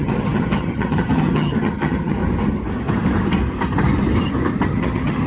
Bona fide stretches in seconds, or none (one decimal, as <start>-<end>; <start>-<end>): 2.2-4.7